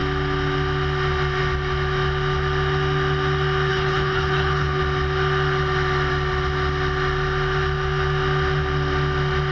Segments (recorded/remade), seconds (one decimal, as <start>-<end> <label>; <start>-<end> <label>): 0.0-3.7 recorded; 3.7-4.8 remade; 4.8-9.5 recorded